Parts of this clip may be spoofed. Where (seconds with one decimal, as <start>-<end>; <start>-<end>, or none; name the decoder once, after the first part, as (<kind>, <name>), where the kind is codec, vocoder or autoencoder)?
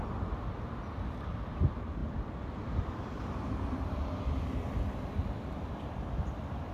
2.0-6.0 (vocoder, BigVGAN v2)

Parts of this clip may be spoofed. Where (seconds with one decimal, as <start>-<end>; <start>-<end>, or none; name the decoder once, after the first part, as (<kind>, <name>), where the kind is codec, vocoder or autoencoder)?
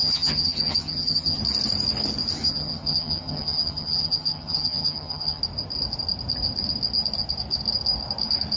0.0-1.4 (vocoder, HiFi-GAN); 2.4-5.4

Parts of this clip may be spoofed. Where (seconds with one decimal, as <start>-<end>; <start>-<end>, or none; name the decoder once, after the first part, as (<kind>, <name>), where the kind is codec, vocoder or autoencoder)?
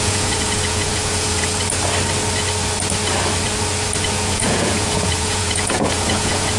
0.0-1.5 (vocoder, Vocos); 4.0-6.6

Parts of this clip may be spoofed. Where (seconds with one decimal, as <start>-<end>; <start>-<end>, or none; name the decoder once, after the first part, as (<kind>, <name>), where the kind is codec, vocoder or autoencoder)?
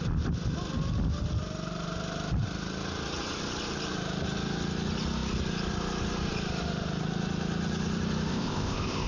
8.3-9.1 (codec, ZipCodec)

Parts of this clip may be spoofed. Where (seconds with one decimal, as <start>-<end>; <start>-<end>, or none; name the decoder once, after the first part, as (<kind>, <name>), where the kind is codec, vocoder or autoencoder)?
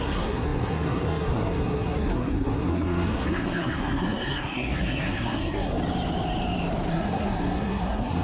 0.0-5.8 (codec, SNAC); 6.9-8.2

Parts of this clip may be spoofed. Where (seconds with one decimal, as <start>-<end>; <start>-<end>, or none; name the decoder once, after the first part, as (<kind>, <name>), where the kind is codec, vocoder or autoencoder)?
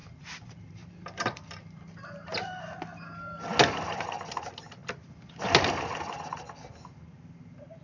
0.0-1.8 (vocoder, BigVGAN v2); 4.8-5.4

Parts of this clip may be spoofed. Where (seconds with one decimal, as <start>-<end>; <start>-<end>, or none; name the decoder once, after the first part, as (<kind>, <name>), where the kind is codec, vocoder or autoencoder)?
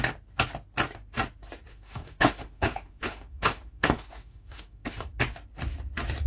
1.7-5.1 (autoencoder, DAC-VAE)